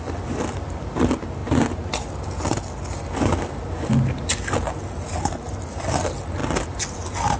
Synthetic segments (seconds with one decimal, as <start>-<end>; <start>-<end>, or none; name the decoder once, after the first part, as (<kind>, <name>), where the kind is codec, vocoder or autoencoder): none